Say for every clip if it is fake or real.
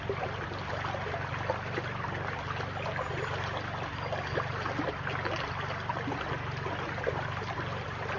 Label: real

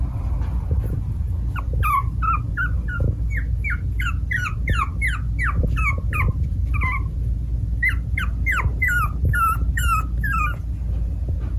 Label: real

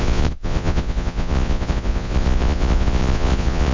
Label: fake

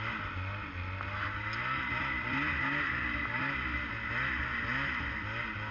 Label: real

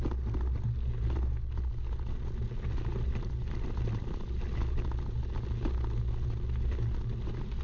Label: real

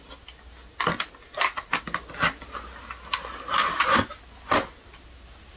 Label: real